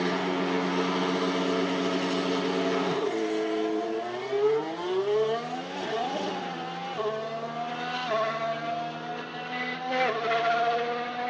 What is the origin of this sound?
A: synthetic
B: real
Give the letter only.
B